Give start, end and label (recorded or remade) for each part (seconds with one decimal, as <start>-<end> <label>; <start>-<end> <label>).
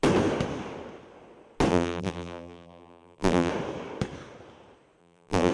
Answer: 0.0-1.7 recorded; 1.7-3.5 remade; 3.5-5.0 recorded; 5.0-5.5 remade